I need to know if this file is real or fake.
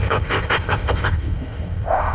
fake